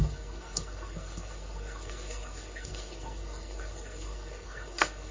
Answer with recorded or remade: remade